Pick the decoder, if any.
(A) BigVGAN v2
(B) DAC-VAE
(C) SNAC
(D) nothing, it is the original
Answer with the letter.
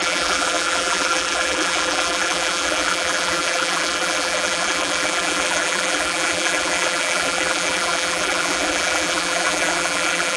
A